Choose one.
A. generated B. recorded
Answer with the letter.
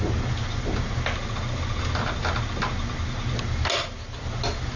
B